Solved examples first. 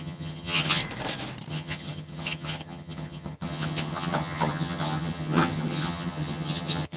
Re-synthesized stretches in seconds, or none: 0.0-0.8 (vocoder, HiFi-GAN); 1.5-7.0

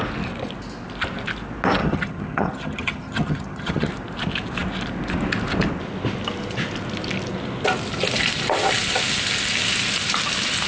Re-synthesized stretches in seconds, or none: 1.8-3.9 (vocoder, HiFi-GAN)

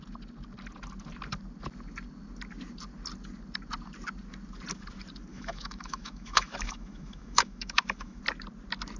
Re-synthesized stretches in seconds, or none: 5.3-8.2 (autoencoder, DAC-VAE)

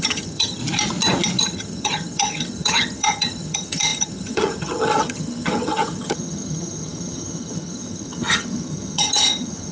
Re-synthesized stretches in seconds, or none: 0.0-0.6 (vocoder, HiFi-GAN); 1.4-9.7

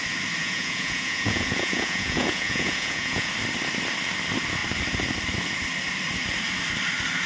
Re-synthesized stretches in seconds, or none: 0.4-3.3 (vocoder, Vocos)

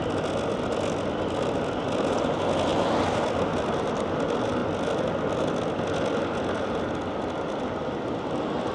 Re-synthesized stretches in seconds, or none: none